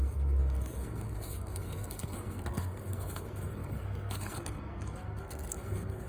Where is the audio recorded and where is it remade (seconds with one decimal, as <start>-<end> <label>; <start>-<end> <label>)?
0.0-6.1 remade